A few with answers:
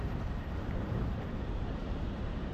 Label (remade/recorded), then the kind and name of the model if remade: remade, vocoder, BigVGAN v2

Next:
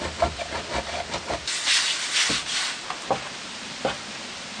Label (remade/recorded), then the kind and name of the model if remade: recorded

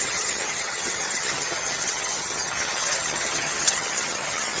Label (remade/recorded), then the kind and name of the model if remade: remade, vocoder, HiFi-GAN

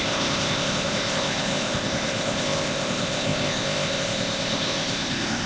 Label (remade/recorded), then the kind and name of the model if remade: remade, codec, ZipCodec